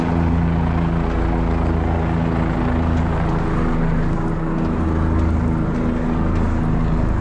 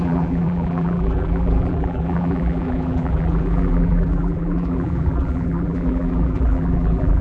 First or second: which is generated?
second